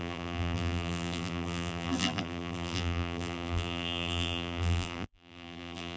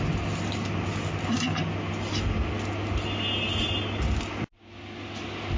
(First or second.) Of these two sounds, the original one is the second